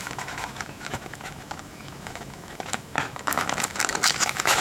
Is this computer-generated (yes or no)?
yes